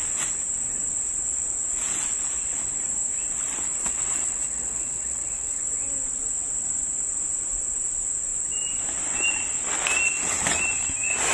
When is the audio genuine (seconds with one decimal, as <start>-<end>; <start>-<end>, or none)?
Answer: 0.0-3.8; 5.6-11.3